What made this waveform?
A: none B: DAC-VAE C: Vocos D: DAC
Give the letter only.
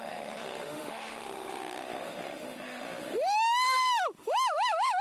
B